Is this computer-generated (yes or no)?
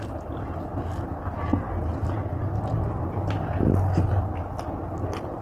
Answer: no